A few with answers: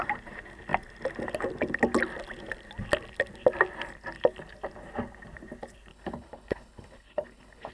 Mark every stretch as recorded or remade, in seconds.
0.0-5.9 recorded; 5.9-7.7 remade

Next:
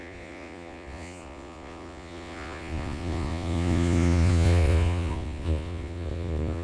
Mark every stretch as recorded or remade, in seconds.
0.0-6.6 remade

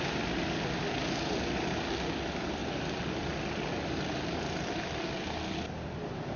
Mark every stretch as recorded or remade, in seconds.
0.0-6.4 recorded